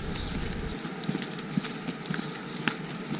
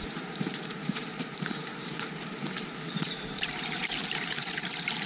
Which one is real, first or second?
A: first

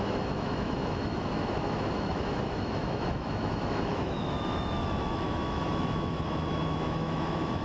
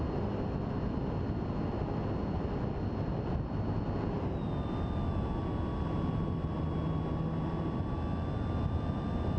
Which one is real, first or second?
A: second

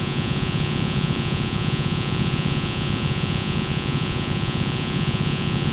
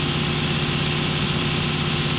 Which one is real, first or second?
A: second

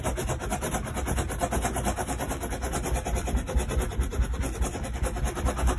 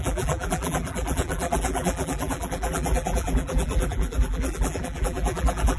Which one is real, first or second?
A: first